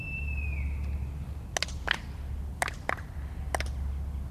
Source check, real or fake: real